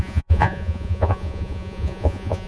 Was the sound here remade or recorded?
remade